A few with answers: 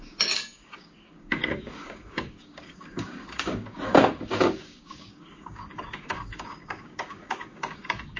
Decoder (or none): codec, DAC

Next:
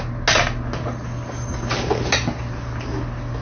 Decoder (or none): none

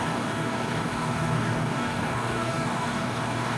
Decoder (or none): codec, DAC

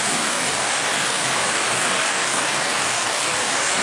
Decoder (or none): codec, DAC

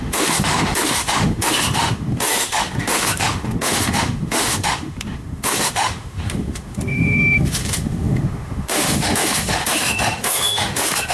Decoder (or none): autoencoder, DAC-VAE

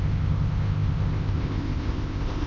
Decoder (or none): codec, ZipCodec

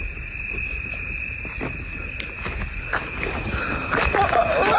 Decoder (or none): none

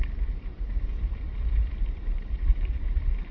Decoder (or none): vocoder, BigVGAN v2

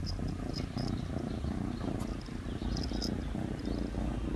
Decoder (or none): none